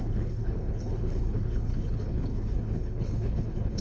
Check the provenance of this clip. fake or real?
fake